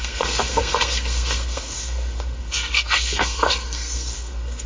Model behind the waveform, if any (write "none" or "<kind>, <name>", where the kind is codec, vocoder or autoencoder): codec, SNAC